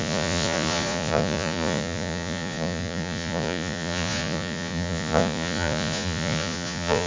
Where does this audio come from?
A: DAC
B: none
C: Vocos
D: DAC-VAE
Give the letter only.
C